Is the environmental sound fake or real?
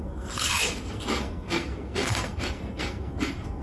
fake